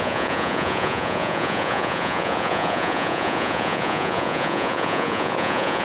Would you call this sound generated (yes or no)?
yes